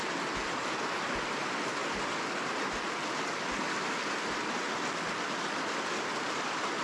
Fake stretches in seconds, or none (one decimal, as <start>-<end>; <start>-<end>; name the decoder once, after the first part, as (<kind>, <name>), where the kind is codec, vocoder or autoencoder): none